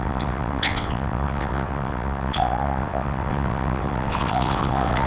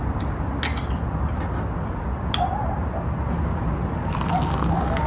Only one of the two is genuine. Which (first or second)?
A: second